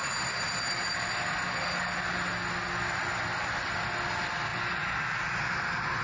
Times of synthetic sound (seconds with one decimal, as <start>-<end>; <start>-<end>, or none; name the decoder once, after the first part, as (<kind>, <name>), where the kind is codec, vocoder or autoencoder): none